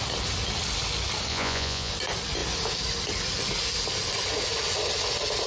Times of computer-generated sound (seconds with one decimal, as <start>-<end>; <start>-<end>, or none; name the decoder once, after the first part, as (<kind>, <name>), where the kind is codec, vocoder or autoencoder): 1.3-1.9 (vocoder, Vocos)

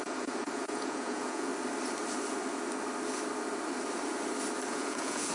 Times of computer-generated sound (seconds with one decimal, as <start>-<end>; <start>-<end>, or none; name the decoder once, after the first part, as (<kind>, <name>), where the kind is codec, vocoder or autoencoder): 0.0-1.5 (vocoder, Vocos); 4.7-5.3

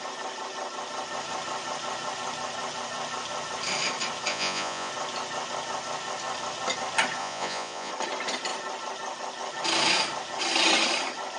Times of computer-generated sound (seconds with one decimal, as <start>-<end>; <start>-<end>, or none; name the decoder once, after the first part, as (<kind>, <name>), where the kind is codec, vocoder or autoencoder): 4.3-4.9 (vocoder, Vocos); 7.2-7.9

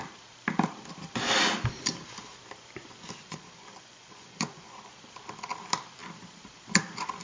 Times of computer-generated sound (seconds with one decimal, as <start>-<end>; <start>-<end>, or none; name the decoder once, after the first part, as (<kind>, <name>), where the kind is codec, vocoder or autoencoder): 3.2-4.9 (vocoder, Vocos)

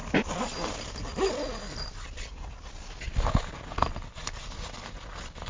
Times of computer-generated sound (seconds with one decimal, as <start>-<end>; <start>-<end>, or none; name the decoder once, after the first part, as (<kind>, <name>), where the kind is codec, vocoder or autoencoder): none

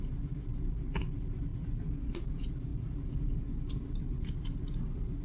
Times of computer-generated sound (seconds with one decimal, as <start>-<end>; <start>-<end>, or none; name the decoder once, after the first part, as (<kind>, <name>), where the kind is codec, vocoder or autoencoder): none

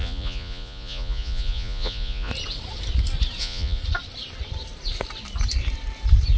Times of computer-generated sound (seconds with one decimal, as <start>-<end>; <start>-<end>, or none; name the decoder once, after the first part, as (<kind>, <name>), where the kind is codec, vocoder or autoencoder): 0.0-2.3 (vocoder, Vocos); 3.4-3.8